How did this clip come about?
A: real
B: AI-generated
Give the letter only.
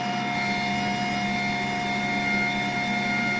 A